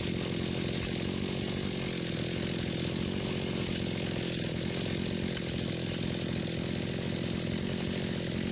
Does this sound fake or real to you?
real